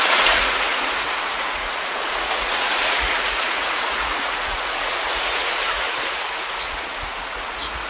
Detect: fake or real fake